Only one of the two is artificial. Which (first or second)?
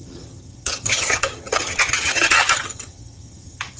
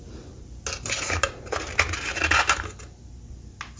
first